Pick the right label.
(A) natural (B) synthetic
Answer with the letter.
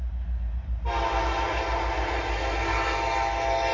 A